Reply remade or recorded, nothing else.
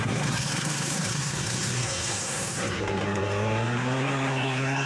remade